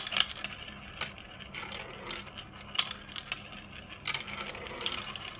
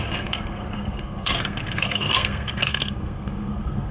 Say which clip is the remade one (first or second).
second